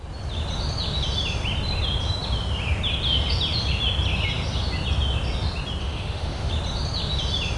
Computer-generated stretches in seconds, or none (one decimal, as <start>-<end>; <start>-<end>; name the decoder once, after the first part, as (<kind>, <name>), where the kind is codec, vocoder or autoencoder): 5.8-6.5 (autoencoder, DAC-VAE)